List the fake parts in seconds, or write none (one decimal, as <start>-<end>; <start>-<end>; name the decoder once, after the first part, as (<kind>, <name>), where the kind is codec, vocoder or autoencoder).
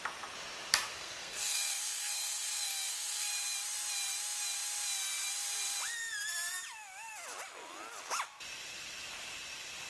0.9-3.3 (codec, SNAC)